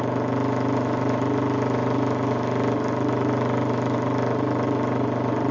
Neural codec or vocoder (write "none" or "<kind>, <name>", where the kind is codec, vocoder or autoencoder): none